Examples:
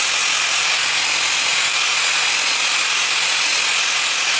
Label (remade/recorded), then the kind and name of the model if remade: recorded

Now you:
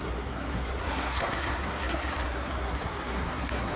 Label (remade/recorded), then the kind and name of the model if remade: remade, codec, SNAC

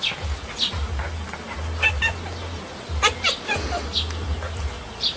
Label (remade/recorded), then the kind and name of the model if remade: recorded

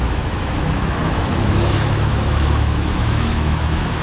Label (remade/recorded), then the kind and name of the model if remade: remade, autoencoder, DAC-VAE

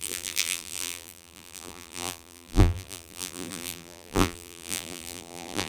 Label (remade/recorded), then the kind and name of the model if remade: remade, vocoder, BigVGAN v2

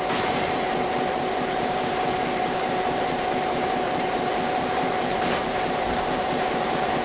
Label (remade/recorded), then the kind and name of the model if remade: remade, vocoder, BigVGAN v2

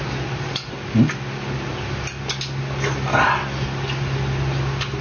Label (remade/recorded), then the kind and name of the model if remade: recorded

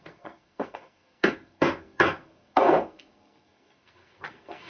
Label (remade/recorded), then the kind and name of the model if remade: remade, codec, SNAC